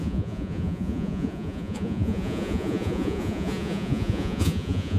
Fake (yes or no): yes